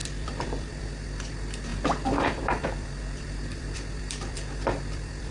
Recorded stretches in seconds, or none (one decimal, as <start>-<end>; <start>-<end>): 0.8-1.7